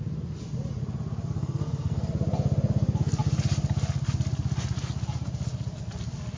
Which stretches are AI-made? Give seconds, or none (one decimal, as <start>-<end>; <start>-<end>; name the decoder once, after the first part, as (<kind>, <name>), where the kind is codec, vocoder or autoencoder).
1.4-2.1 (codec, SNAC)